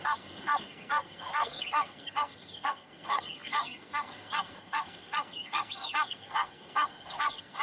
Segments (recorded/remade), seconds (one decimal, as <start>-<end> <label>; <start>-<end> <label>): 0.0-7.6 remade